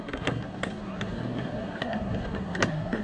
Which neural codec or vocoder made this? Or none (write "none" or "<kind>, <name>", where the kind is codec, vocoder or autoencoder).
codec, SNAC